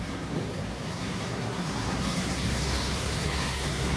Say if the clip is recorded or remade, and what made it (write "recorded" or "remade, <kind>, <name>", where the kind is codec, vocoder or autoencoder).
remade, codec, SNAC